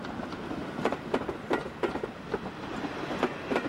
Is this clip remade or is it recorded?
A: recorded